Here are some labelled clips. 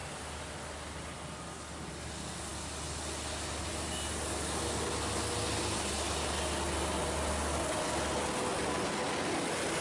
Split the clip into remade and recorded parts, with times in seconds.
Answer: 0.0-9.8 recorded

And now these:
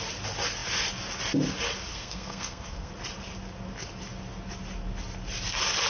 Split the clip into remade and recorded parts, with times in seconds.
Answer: 0.0-1.9 recorded; 1.9-2.9 remade; 2.9-5.9 recorded

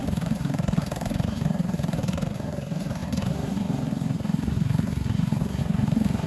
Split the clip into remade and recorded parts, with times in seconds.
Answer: 0.0-6.3 remade

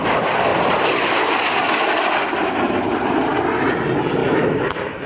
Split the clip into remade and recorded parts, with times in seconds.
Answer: 0.0-4.2 recorded; 4.2-5.1 remade

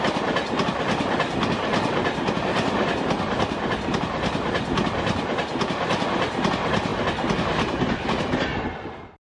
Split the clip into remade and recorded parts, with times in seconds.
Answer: 0.0-9.3 recorded

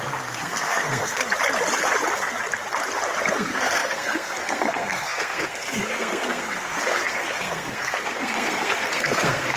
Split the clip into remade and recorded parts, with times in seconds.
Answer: 0.0-1.2 remade; 1.2-3.3 recorded; 3.3-9.6 remade

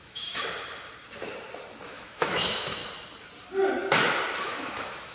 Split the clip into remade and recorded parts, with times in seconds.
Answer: 0.0-0.4 remade; 0.4-1.9 recorded; 1.9-2.8 remade; 2.8-4.4 recorded; 4.4-5.1 remade